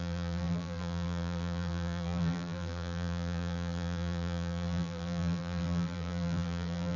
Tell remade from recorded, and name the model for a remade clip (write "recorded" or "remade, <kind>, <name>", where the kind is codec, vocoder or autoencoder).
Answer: remade, vocoder, BigVGAN v2